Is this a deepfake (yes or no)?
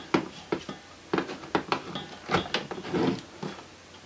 no